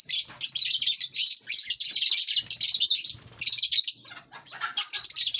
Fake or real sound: real